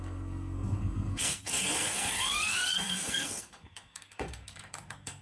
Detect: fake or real fake